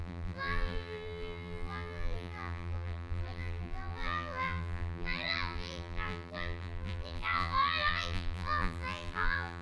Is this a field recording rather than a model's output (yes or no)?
no